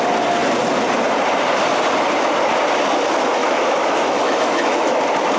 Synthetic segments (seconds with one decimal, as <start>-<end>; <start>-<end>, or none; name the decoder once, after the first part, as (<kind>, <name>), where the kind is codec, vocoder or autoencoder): 3.4-5.0 (autoencoder, DAC-VAE)